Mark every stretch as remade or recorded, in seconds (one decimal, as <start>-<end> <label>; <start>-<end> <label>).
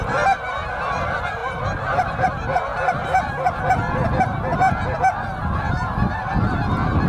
0.0-7.1 recorded